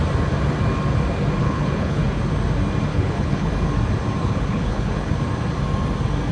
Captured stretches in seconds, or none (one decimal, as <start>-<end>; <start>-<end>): 0.0-1.4; 2.0-2.9; 3.5-4.2; 5.1-6.3